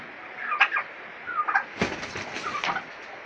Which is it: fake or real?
real